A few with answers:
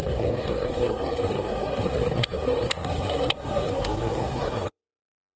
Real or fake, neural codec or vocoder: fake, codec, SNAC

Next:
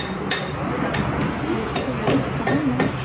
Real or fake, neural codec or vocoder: real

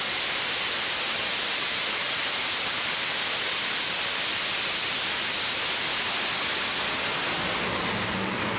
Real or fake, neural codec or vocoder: real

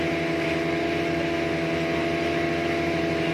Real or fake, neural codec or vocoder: real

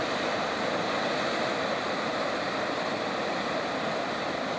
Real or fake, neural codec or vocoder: real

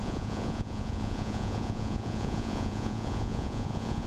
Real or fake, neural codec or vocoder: fake, vocoder, Vocos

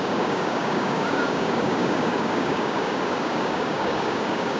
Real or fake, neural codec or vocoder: fake, codec, DAC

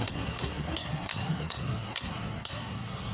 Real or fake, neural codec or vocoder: fake, codec, SNAC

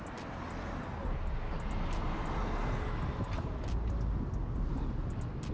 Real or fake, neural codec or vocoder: real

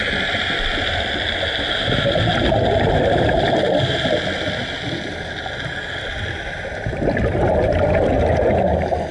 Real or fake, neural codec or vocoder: real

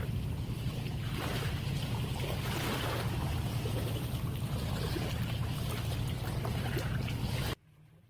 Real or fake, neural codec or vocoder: real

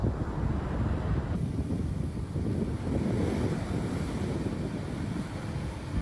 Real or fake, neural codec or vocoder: real